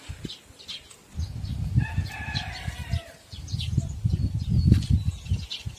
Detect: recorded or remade recorded